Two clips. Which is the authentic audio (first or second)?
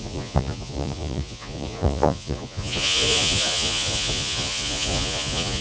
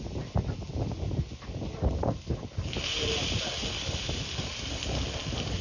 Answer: second